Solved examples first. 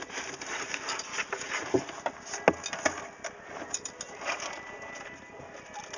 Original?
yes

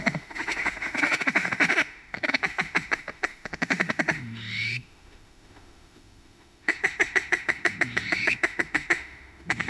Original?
no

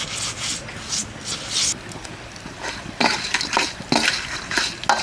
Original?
yes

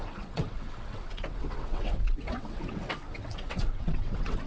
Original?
no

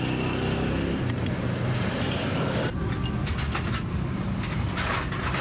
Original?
yes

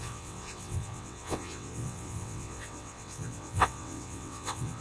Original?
no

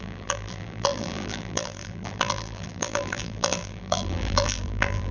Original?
no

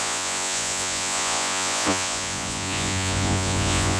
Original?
no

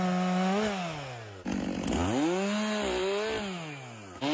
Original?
yes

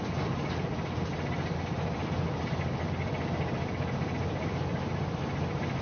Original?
yes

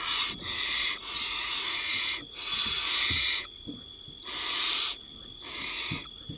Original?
no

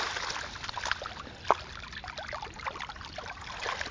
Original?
yes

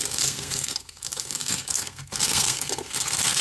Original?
no